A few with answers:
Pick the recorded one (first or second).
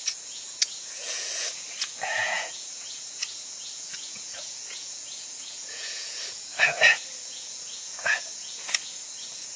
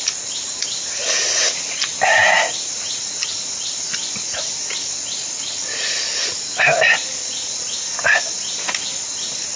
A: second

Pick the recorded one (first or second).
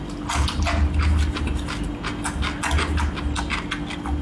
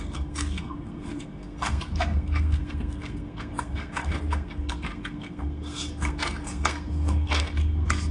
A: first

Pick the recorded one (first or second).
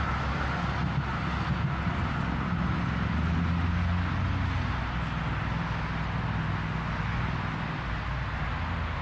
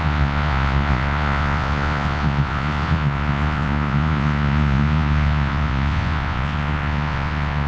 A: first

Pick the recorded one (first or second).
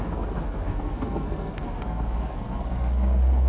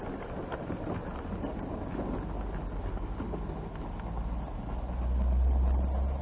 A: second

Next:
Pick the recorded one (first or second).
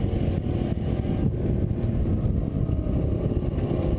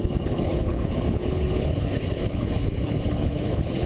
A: first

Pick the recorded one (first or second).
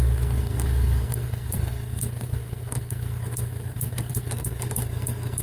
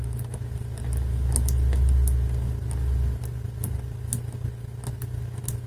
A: second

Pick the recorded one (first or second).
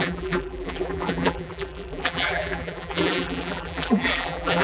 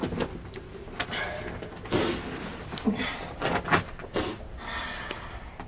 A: second